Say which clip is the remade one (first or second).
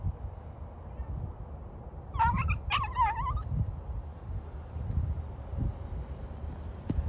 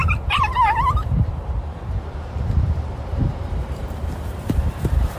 second